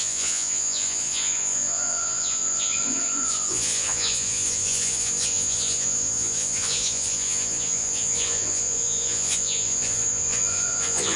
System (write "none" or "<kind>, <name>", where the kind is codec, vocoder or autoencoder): vocoder, Vocos